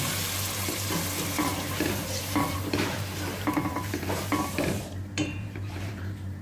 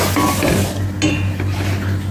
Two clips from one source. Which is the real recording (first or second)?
second